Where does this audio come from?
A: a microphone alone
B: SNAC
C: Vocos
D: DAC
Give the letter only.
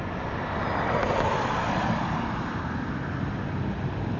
A